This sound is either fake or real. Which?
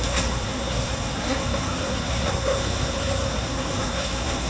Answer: fake